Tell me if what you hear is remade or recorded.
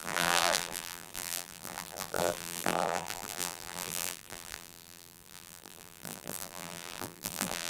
remade